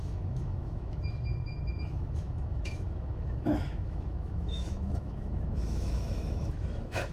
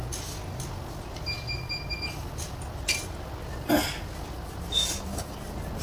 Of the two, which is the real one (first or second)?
second